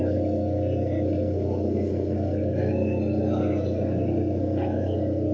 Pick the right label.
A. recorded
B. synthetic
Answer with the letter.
B